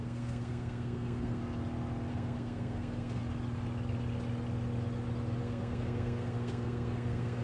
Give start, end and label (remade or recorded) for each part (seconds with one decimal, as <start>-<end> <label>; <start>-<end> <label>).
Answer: 0.0-1.4 remade; 1.4-2.1 recorded; 2.1-3.2 remade; 3.2-5.4 recorded; 5.4-7.4 remade